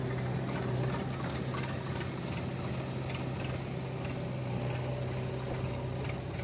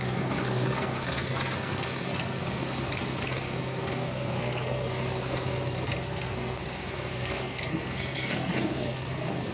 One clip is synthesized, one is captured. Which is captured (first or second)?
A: first